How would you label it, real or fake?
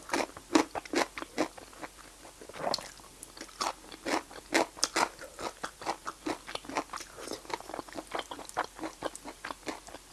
real